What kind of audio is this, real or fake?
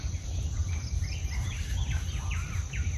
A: real